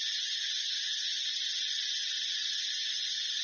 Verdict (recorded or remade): recorded